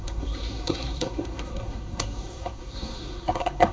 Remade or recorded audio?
remade